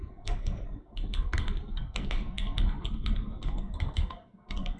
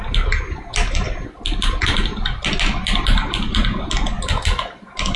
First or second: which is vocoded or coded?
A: first